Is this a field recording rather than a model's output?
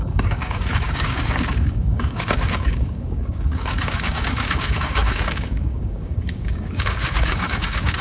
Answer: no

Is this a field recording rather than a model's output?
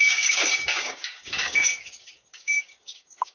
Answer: no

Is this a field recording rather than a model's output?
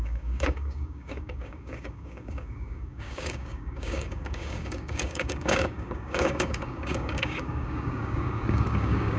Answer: no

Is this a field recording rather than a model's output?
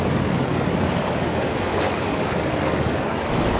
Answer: no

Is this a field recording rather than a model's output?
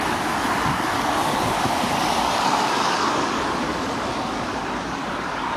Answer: no